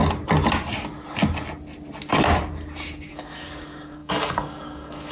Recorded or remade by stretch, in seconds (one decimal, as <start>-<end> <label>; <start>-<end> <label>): 0.0-3.1 recorded; 3.1-5.1 remade